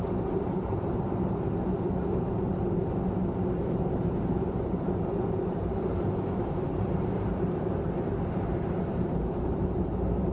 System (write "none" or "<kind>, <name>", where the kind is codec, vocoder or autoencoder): vocoder, BigVGAN v2